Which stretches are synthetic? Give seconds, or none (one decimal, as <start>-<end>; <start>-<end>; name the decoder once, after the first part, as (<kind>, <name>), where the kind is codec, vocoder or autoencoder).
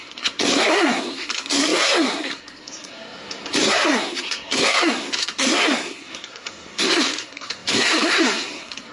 0.0-8.9 (codec, SNAC)